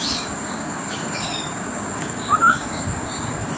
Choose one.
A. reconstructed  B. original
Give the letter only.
A